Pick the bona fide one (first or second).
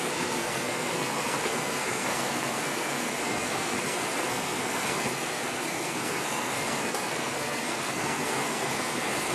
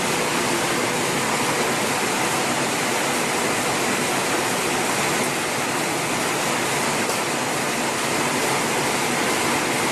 second